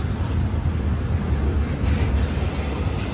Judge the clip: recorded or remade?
recorded